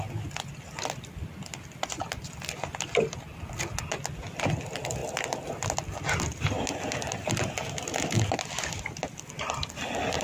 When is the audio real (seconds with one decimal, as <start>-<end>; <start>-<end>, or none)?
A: 0.0-10.2